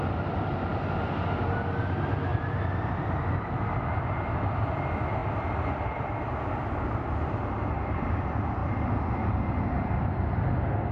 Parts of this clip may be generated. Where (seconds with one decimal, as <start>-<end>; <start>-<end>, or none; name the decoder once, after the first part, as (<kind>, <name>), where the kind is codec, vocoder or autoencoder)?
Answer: 2.3-3.1 (vocoder, BigVGAN v2); 5.2-7.6